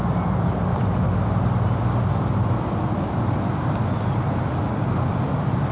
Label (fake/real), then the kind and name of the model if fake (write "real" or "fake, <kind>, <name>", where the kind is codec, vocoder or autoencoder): real